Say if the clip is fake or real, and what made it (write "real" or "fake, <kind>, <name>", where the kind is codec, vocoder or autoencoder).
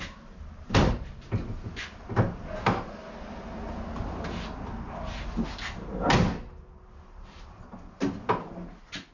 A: real